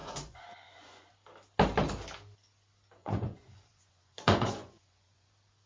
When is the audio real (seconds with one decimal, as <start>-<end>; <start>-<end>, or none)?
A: 1.1-3.0; 5.3-5.7

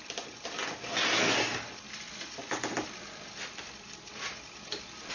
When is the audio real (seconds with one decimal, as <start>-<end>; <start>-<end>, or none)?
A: 0.0-5.1

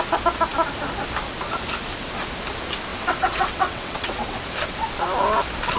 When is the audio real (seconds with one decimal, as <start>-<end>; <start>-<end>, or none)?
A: 0.0-2.9; 4.4-5.8

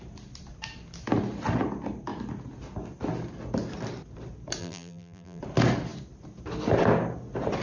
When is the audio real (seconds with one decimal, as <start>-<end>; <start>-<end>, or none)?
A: 0.0-4.6; 5.4-7.6

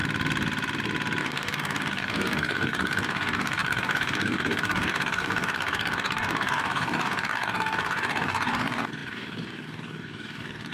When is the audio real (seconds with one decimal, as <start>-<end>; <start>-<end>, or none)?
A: 0.0-1.2